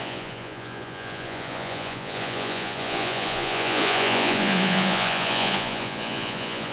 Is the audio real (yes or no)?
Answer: no